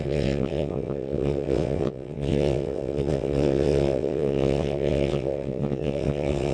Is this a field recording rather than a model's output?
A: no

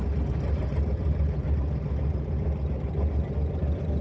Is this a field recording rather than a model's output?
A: yes